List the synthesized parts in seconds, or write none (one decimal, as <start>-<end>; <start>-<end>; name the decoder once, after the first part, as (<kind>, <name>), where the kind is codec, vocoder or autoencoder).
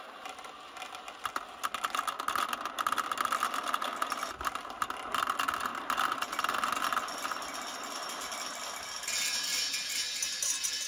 none